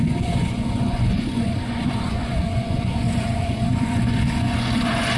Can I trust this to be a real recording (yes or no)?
no